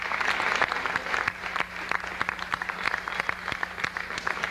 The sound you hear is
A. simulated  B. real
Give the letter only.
B